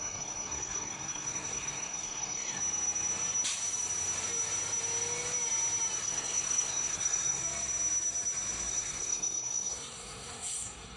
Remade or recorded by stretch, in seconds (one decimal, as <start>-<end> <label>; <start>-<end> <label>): 0.0-2.6 remade; 2.6-6.0 recorded; 6.0-7.4 remade; 7.4-8.7 recorded; 8.7-11.0 remade